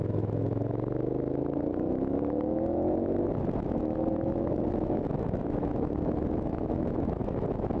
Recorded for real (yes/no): no